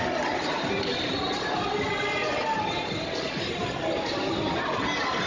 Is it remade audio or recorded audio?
recorded